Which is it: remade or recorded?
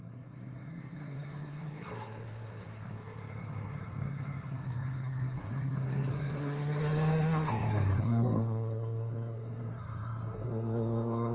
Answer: remade